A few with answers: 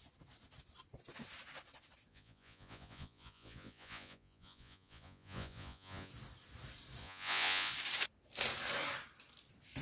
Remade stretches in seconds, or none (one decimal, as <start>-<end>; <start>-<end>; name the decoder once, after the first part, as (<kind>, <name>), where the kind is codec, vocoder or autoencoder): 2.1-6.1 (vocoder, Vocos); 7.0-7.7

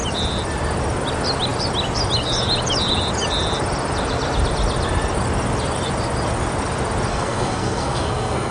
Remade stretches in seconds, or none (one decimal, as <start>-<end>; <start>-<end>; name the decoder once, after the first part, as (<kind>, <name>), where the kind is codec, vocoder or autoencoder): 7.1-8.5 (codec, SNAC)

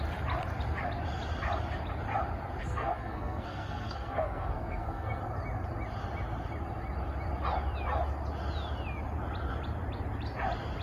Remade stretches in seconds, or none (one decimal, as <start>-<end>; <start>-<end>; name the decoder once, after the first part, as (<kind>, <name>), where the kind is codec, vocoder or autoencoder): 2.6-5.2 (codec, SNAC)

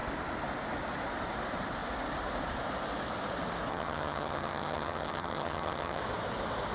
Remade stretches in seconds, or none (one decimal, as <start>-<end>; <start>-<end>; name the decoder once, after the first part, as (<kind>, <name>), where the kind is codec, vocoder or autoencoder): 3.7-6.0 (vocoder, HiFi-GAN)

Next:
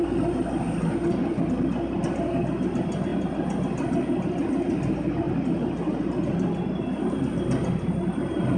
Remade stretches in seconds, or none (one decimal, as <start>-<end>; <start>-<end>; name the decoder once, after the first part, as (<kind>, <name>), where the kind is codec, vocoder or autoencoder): none

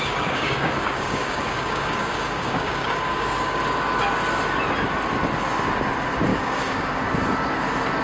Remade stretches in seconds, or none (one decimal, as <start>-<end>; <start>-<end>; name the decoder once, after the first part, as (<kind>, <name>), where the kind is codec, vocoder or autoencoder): 0.0-3.6 (codec, DAC); 6.3-7.0

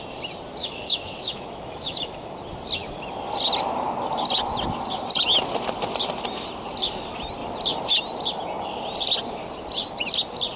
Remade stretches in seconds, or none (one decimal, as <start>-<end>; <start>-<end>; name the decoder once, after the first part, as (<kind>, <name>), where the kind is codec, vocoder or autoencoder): 0.6-2.3 (autoencoder, DAC-VAE)